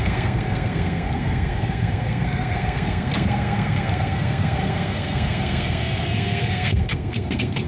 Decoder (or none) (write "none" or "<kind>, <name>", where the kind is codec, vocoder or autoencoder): codec, SNAC